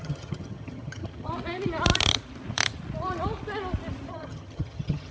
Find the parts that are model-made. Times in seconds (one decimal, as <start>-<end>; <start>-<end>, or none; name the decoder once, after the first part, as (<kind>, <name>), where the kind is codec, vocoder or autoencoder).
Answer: 0.0-1.3 (vocoder, HiFi-GAN); 4.1-5.1